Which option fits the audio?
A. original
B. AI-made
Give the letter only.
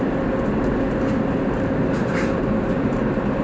A